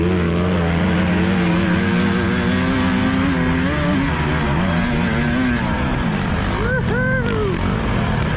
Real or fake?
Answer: real